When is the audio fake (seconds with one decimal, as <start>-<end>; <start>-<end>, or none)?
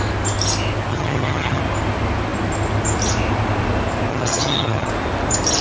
0.9-1.6; 4.1-4.9